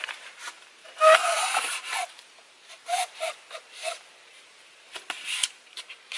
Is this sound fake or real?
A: fake